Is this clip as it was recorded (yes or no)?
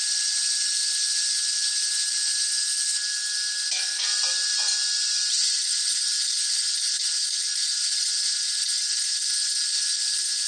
yes